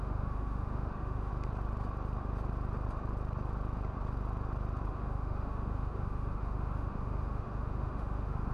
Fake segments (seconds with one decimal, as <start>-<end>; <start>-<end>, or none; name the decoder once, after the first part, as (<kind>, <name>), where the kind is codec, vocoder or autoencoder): 0.0-1.3 (autoencoder, DAC-VAE); 4.9-8.5